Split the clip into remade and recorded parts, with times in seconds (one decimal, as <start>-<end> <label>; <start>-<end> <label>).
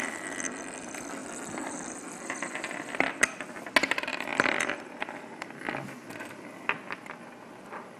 0.0-4.1 recorded; 4.1-5.7 remade; 5.7-8.0 recorded